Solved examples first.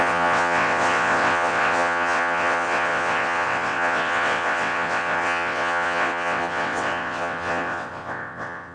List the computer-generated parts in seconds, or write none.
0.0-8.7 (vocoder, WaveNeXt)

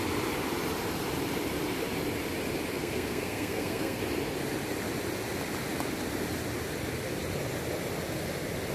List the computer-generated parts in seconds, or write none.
2.7-4.0 (codec, SNAC)

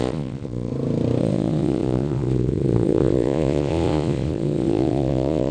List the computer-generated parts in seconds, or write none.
0.0-0.7 (vocoder, Vocos); 1.2-5.5

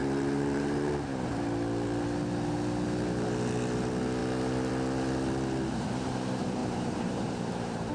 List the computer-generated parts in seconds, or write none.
0.0-0.9 (vocoder, BigVGAN v2); 6.6-7.9

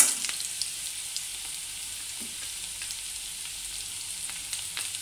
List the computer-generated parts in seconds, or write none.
none

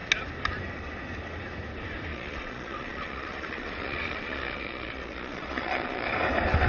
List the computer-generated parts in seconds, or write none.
2.1-6.1 (vocoder, Vocos)

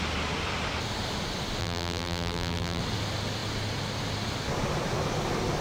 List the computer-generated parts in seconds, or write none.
1.6-2.8 (vocoder, BigVGAN v2)